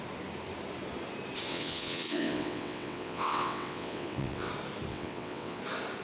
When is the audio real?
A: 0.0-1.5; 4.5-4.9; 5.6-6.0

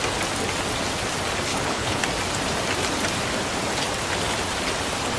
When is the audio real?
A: 0.0-1.5; 2.0-5.2

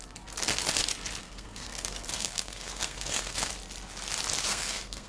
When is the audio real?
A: 0.0-1.2; 3.5-4.5

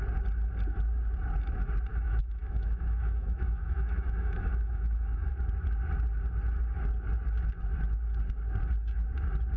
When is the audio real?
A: 0.0-1.9; 5.3-9.6

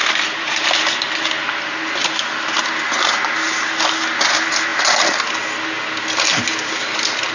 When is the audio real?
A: 0.6-7.3

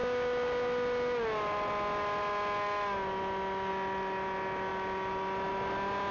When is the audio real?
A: 0.0-6.1

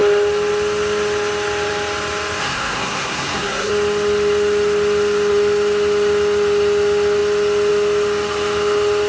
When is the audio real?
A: 0.0-2.4; 3.7-9.1